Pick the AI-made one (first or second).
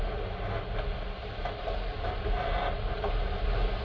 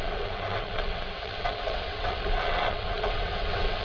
second